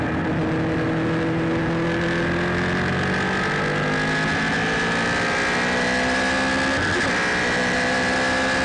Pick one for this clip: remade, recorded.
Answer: recorded